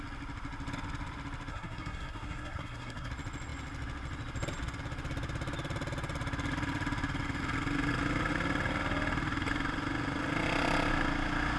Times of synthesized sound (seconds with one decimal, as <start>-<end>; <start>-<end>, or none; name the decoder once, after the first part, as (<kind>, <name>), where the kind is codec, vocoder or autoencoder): 1.5-3.1 (codec, SNAC)